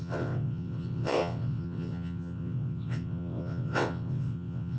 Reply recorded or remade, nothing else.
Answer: remade